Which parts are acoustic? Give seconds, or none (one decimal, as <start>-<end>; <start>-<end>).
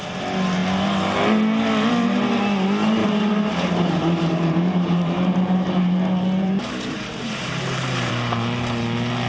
0.0-3.0; 8.1-9.3